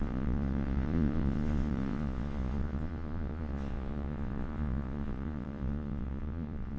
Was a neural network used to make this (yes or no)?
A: yes